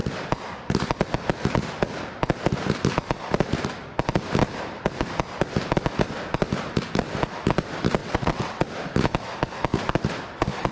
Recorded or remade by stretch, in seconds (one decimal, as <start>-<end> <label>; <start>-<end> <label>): 0.0-8.0 recorded; 8.0-8.6 remade; 8.6-10.7 recorded